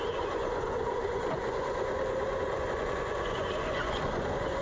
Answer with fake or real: fake